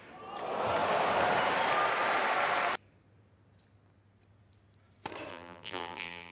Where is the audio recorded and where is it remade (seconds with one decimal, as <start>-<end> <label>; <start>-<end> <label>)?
0.0-5.3 recorded; 5.3-6.3 remade